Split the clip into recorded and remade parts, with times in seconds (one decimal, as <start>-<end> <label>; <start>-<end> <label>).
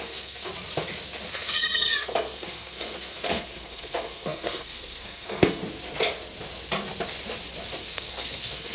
0.0-0.5 remade; 0.5-1.3 recorded; 1.3-5.6 remade; 5.6-7.8 recorded; 7.8-8.7 remade